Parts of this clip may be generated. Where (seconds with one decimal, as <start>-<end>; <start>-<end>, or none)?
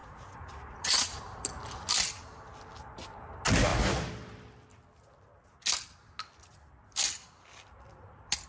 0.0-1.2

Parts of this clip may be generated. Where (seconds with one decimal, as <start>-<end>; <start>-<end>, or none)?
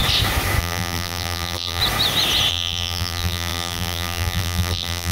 0.6-1.8; 2.5-5.1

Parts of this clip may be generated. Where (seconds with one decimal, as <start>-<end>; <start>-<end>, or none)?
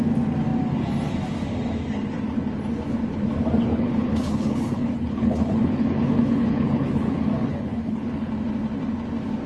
3.7-8.3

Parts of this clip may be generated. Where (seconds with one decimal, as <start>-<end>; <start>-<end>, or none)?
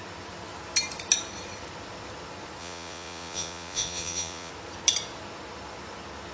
2.6-4.5